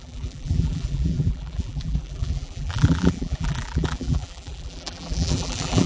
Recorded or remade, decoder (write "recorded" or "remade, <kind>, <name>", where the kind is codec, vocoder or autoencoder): remade, vocoder, BigVGAN v2